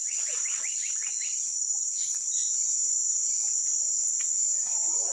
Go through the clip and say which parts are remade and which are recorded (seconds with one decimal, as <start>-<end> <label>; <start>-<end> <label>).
0.0-1.1 remade; 1.1-5.1 recorded

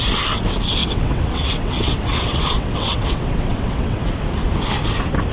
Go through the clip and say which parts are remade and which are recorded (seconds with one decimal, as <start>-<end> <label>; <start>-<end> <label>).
0.0-0.8 recorded; 0.8-4.0 remade; 4.0-5.3 recorded